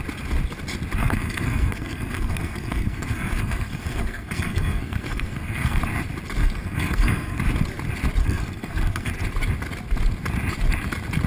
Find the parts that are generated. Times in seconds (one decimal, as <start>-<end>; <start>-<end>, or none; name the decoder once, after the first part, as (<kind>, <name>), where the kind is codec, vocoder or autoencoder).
1.0-5.8 (codec, SNAC); 6.4-7.4; 8.2-9.1